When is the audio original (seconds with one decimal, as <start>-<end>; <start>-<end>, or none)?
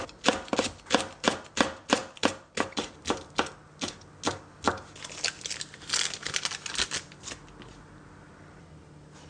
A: 0.0-9.3